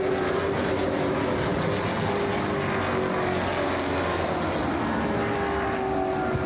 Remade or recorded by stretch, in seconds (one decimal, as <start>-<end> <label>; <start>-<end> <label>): 0.0-6.5 recorded